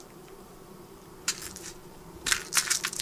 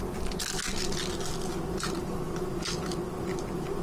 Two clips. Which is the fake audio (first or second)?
first